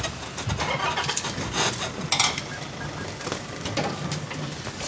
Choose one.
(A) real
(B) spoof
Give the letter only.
A